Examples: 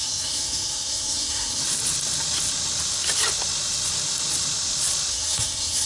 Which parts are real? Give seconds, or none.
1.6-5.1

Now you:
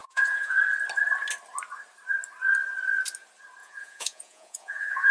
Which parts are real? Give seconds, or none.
0.6-3.6

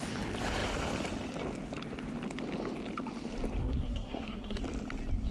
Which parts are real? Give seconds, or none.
0.0-3.6; 4.6-5.3

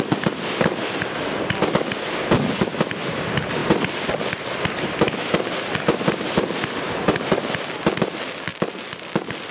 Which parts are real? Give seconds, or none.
0.0-8.5